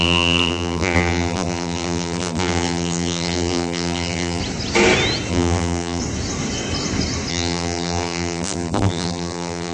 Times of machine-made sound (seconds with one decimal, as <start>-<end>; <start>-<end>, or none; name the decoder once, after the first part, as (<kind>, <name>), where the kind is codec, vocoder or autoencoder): 0.0-4.4 (vocoder, BigVGAN v2); 5.3-6.0; 7.3-9.7